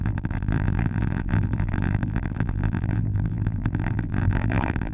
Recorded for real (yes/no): no